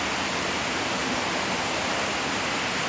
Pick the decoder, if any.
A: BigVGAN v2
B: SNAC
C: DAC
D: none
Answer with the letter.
D